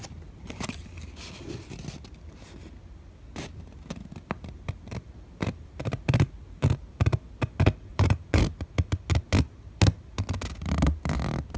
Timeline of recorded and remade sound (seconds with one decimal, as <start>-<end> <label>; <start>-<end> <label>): 0.0-7.9 recorded; 7.9-8.4 remade; 8.4-11.6 recorded